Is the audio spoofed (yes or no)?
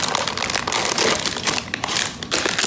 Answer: no